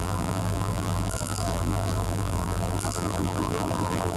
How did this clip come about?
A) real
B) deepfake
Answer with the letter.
B